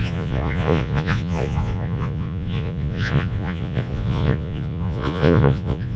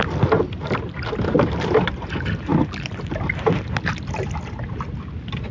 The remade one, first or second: first